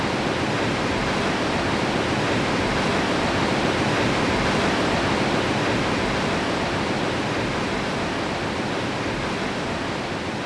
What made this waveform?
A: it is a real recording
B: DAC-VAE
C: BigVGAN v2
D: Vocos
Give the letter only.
A